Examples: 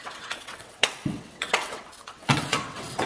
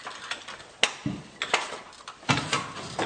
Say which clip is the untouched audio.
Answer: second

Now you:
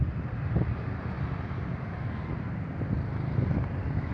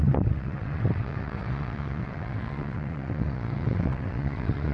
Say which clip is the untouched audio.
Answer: first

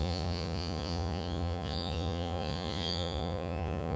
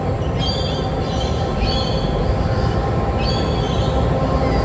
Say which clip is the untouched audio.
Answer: second